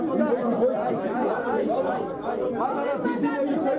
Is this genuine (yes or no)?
yes